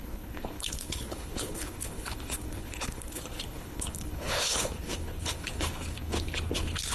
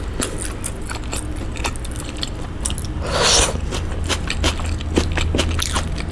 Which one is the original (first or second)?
second